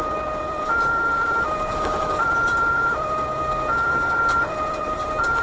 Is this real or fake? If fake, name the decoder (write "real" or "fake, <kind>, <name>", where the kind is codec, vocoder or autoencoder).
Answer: fake, vocoder, BigVGAN v2